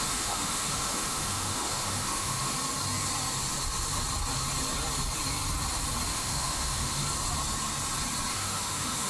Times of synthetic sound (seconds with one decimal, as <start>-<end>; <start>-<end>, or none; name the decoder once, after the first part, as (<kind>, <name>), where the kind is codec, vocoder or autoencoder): 0.0-2.5 (autoencoder, DAC-VAE); 6.1-7.0; 8.3-9.1